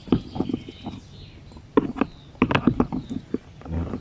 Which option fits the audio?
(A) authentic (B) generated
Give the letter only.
A